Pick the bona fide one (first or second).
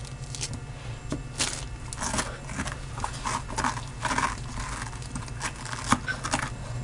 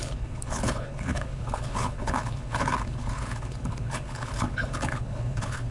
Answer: first